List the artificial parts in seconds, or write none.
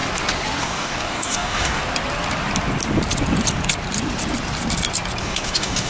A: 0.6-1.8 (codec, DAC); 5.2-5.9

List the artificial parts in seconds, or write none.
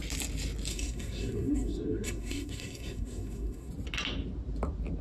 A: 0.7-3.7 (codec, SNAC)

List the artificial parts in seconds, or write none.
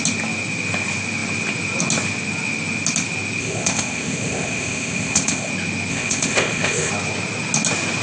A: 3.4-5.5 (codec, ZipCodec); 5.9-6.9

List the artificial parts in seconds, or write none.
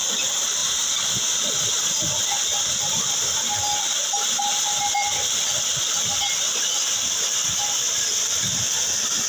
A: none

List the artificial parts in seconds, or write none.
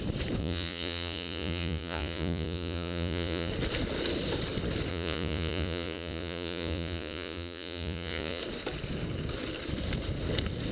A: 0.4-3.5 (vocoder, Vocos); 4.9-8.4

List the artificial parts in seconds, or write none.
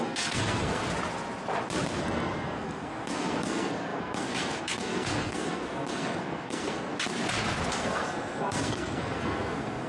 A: 0.0-0.8 (codec, SNAC); 2.0-6.9; 7.7-9.9